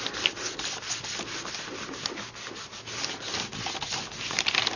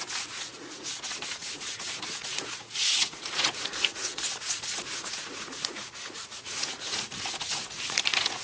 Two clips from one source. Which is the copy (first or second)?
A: second